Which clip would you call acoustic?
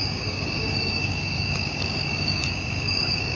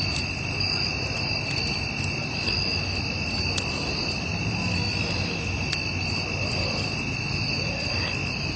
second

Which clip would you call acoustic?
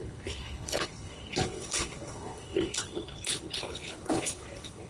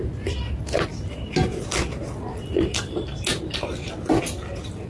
second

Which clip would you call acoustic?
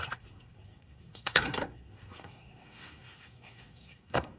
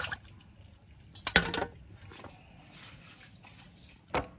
second